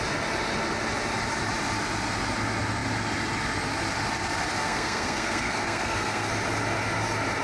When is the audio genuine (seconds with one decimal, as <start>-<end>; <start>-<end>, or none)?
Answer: 0.0-4.6; 6.3-7.4